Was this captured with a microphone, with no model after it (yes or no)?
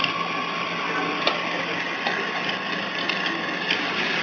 yes